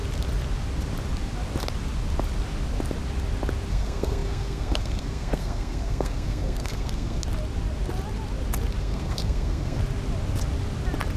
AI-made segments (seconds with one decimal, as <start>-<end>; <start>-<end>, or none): 3.7-7.2; 8.8-9.8